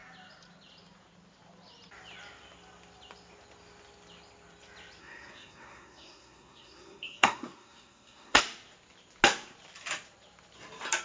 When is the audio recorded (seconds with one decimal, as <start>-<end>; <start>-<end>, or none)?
0.0-5.0; 8.4-11.0